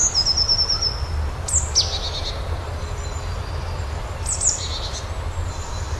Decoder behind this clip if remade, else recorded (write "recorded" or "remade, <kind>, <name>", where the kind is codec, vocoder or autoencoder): recorded